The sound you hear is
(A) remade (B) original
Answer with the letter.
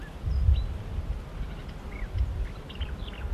B